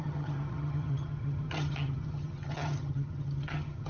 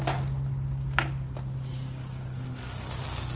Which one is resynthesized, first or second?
first